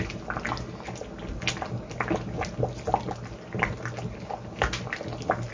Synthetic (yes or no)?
no